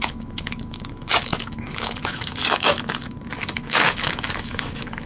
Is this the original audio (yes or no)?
no